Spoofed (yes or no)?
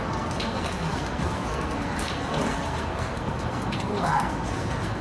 yes